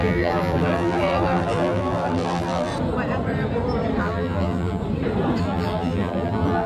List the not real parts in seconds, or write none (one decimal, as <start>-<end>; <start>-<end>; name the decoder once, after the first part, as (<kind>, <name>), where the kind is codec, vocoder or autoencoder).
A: 0.0-2.7 (vocoder, BigVGAN v2); 4.0-4.8; 5.4-6.7